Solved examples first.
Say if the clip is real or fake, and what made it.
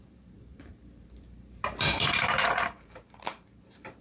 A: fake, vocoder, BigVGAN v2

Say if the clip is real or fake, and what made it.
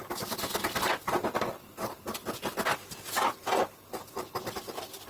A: real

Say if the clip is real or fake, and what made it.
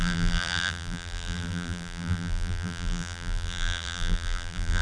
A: fake, vocoder, BigVGAN v2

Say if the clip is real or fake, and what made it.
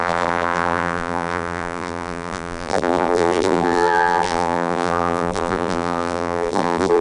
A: fake, vocoder, BigVGAN v2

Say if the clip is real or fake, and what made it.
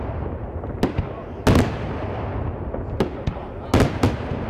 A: real